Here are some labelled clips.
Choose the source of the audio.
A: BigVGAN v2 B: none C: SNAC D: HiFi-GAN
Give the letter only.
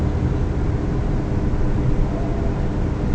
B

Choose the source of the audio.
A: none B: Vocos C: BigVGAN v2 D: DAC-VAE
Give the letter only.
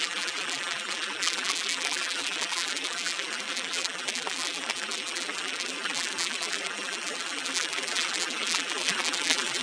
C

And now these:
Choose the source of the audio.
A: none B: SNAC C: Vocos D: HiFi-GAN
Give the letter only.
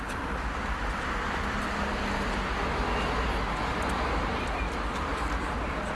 A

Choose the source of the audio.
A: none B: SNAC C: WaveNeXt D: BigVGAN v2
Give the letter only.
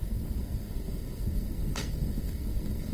B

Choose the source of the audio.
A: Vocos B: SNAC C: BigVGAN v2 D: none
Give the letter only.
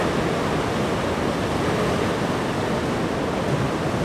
D